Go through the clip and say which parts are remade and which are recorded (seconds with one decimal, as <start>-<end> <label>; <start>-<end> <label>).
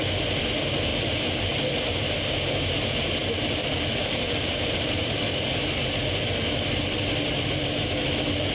0.0-0.9 recorded; 0.9-1.8 remade; 1.8-3.6 recorded; 3.6-5.0 remade; 5.0-8.5 recorded